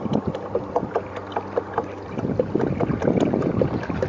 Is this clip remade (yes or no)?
no